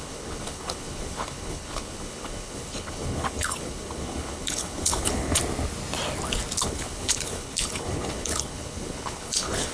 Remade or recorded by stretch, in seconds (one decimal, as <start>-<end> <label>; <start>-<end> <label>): 0.0-5.4 remade; 5.4-6.6 recorded; 6.6-9.7 remade